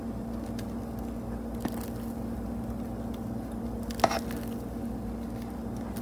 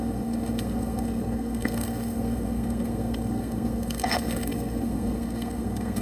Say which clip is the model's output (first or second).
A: second